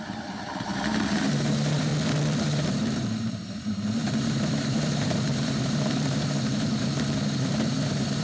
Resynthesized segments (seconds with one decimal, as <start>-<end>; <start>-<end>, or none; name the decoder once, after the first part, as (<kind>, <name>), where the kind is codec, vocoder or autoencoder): 0.0-1.9 (vocoder, BigVGAN v2); 2.4-8.2